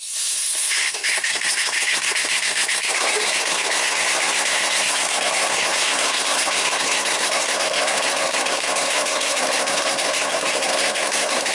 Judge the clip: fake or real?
fake